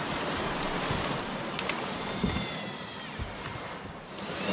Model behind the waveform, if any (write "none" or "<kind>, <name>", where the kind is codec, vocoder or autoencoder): vocoder, BigVGAN v2